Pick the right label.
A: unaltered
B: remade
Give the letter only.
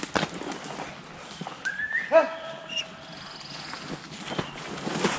A